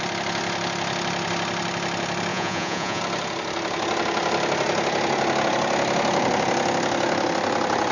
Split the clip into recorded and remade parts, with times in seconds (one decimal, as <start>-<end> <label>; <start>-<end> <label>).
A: 0.0-2.3 recorded; 2.3-3.0 remade; 3.0-7.9 recorded

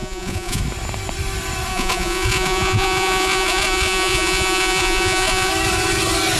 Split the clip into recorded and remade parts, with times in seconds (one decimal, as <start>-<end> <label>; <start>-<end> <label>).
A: 0.0-0.6 remade; 0.6-1.7 recorded; 1.7-5.5 remade; 5.5-6.4 recorded

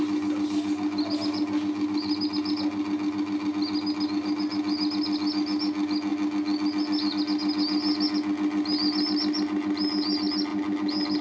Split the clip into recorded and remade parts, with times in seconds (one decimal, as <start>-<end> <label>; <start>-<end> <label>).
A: 0.0-11.2 recorded